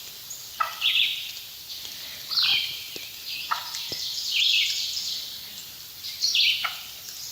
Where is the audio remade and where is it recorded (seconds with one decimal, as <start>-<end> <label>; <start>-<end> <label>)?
0.0-1.1 remade; 1.1-1.7 recorded; 1.7-7.3 remade